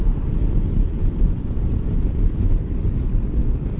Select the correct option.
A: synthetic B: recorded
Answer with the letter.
A